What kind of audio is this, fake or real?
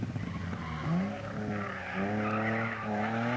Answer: real